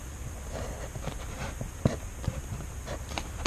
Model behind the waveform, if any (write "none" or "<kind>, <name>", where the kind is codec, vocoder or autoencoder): none